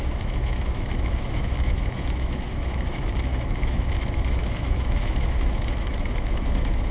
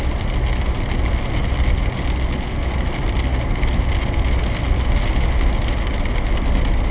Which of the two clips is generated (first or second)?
first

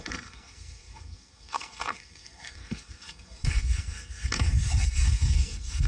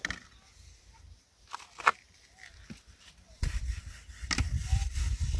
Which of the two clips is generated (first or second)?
first